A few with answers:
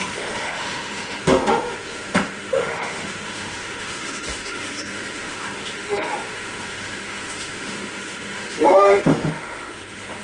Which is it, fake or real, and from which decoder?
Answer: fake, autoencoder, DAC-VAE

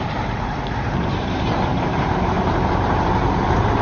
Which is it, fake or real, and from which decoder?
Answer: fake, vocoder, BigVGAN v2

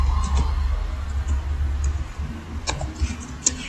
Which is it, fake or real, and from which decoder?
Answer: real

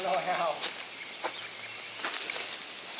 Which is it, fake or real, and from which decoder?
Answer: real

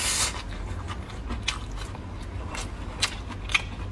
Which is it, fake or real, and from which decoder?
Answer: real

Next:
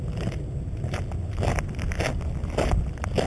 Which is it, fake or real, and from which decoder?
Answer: real